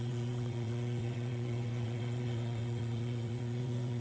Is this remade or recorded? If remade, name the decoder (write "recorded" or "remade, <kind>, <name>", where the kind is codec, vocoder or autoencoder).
remade, vocoder, WaveNeXt